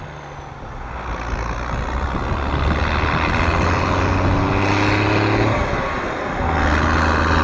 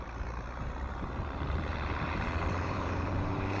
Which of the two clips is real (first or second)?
first